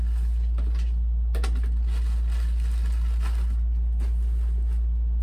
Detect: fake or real real